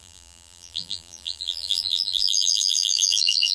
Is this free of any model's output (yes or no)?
no